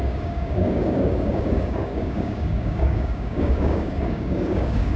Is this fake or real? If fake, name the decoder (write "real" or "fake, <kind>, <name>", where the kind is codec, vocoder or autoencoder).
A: fake, codec, DAC